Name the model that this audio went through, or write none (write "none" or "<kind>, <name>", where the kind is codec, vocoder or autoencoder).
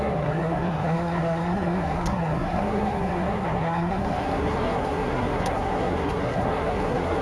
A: codec, SNAC